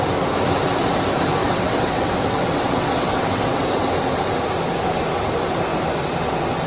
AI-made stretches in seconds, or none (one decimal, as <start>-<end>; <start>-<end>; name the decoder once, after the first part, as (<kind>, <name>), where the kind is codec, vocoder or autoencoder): 1.4-3.8 (vocoder, WaveNeXt)